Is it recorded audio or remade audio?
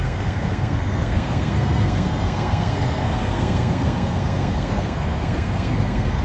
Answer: remade